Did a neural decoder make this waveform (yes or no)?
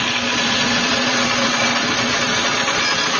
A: yes